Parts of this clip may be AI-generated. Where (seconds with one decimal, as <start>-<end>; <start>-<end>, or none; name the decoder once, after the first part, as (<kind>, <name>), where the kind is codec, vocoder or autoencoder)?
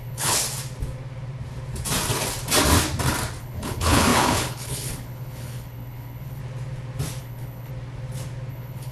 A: 0.0-0.4 (codec, HILCodec); 3.4-6.4; 7.2-7.7; 8.5-8.9